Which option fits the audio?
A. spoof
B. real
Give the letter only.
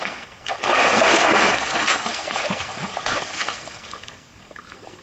A